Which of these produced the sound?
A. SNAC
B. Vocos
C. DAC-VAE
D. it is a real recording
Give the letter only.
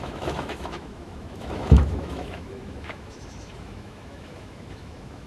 C